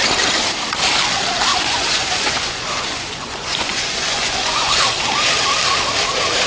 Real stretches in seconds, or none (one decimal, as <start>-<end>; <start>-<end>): 0.0-1.5; 5.0-6.5